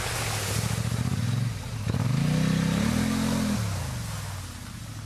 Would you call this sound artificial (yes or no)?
no